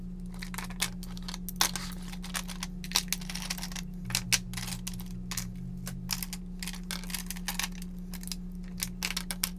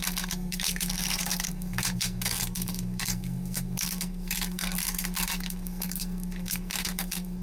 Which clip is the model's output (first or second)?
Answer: second